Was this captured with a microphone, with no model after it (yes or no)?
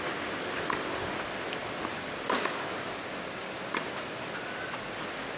yes